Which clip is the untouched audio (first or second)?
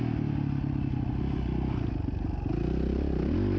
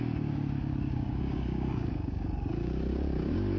first